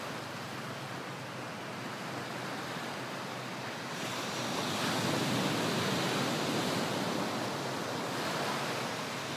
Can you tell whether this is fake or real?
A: real